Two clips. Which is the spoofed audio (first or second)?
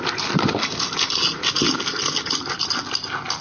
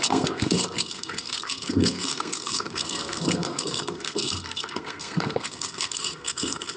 second